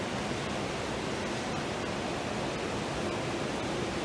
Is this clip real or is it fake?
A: real